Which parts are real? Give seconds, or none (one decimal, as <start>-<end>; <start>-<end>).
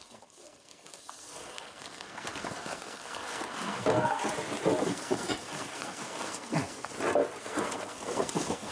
4.2-4.8; 6.9-7.4